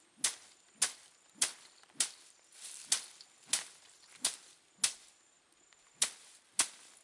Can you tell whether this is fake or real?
real